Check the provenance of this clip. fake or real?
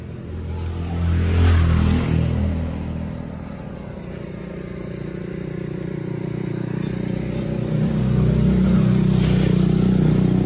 real